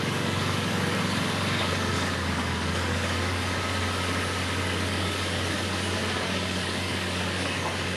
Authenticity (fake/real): fake